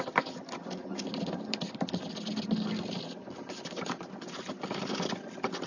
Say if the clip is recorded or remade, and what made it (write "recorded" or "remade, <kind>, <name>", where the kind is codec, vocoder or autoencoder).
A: recorded